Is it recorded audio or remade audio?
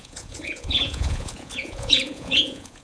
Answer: remade